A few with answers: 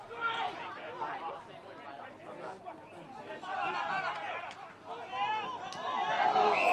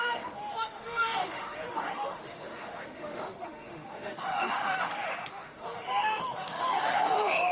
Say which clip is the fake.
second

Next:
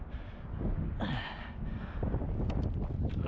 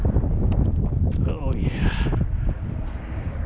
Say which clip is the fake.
second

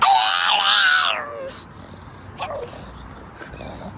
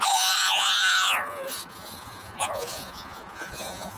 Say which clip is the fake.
second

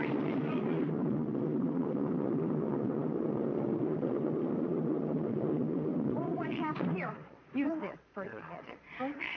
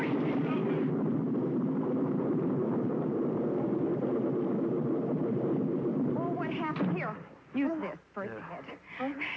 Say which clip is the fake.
first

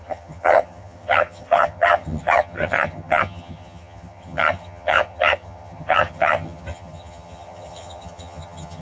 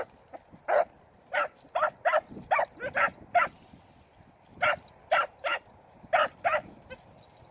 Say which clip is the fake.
first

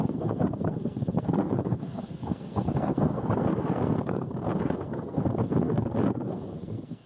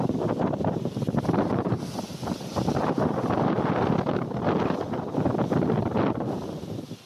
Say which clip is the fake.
first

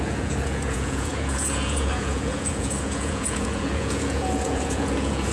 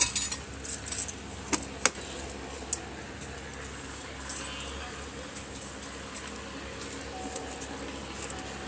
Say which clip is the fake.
first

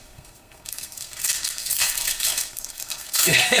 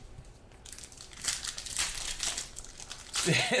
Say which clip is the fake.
first